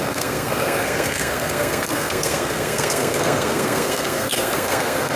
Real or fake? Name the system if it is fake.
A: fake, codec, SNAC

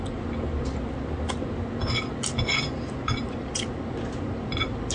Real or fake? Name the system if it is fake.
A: real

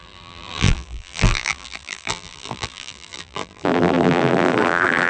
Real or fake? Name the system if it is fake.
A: fake, vocoder, BigVGAN v2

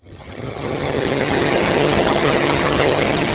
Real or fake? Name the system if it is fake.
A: fake, vocoder, HiFi-GAN